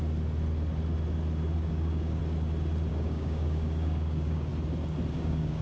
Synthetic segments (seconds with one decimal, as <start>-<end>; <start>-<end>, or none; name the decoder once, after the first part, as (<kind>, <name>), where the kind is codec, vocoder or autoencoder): 1.7-2.2 (codec, DAC); 2.9-4.5; 5.1-5.6